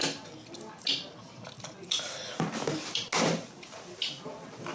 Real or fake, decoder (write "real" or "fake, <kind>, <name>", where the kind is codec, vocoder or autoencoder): real